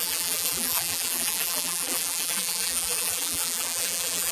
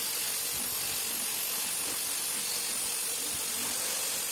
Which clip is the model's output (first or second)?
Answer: first